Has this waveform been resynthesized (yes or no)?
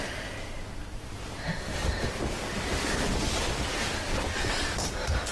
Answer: yes